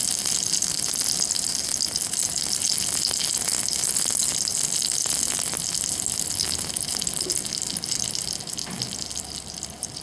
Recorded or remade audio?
recorded